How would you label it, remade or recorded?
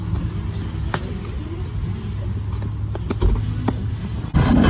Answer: recorded